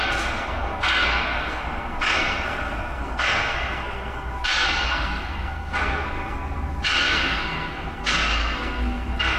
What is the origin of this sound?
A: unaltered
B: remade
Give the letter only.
B